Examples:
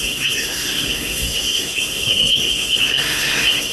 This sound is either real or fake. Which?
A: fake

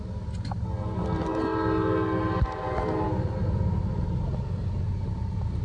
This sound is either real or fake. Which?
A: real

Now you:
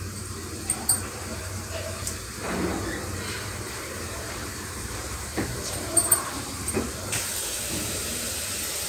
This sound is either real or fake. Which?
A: fake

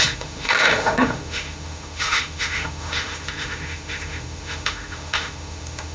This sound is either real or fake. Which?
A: fake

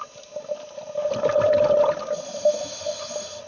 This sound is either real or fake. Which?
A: real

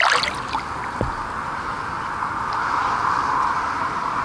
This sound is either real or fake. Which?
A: real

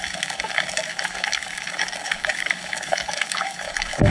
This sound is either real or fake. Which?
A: fake